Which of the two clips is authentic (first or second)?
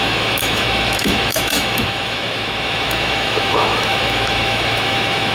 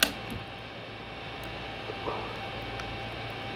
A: second